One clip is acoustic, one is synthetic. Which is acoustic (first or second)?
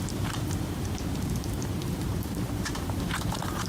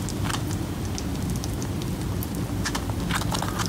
second